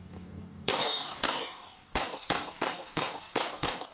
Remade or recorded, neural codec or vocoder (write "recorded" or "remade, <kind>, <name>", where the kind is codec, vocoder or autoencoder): remade, codec, DAC